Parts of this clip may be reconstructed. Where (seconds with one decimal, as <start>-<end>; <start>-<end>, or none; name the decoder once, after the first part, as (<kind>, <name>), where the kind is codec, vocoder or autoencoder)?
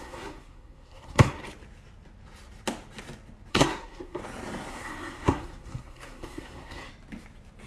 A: 0.0-1.4 (codec, SNAC); 3.5-4.2; 4.7-6.9